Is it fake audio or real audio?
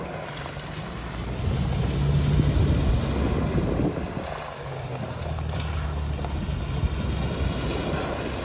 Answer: real